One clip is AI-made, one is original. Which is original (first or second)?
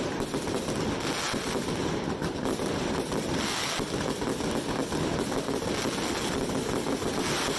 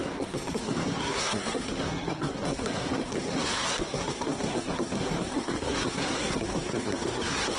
first